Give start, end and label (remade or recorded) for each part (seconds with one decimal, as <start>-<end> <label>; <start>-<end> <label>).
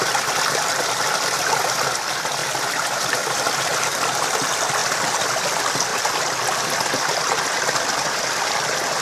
0.0-2.4 recorded; 2.4-3.6 remade; 3.6-9.0 recorded